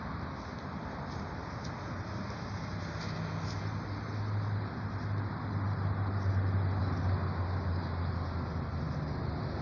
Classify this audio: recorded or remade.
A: recorded